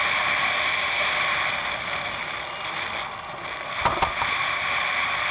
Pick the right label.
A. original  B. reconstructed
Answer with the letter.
A